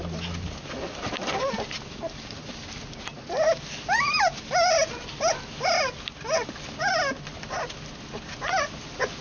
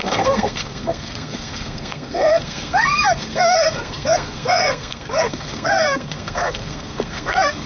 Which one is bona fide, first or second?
first